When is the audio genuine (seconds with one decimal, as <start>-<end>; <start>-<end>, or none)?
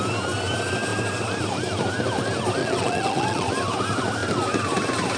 0.0-2.6; 3.5-5.2